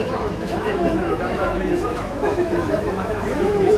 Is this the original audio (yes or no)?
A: no